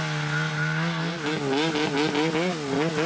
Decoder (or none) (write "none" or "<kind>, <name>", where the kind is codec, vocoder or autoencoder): none